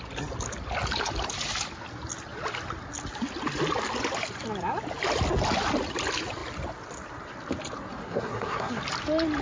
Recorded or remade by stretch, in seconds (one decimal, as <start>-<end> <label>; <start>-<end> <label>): 0.0-8.0 recorded; 8.0-8.8 remade; 8.8-9.4 recorded